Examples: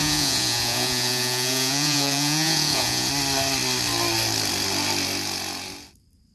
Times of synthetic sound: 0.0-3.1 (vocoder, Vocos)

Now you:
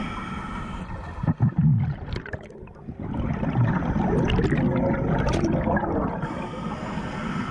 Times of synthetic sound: none

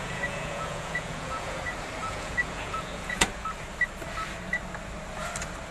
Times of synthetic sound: 0.0-1.6 (vocoder, Vocos); 2.0-3.3

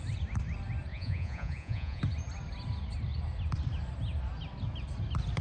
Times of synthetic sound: 0.9-2.0 (vocoder, Vocos)

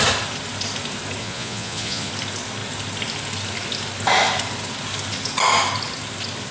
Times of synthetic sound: 1.2-2.1 (vocoder, Vocos)

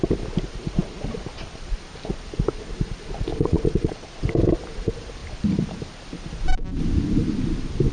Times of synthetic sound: 3.3-4.2 (vocoder, Vocos)

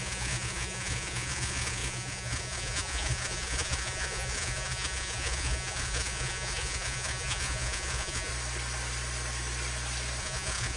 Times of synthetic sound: 0.0-8.3 (vocoder, Vocos); 10.2-10.8